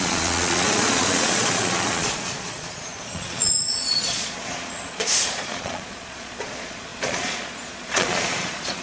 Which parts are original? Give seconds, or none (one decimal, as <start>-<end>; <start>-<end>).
none